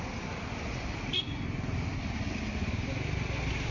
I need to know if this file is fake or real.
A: real